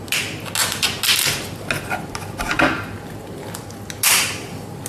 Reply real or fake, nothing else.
real